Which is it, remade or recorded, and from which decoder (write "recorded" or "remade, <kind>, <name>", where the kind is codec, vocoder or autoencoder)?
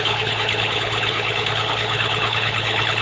remade, codec, HILCodec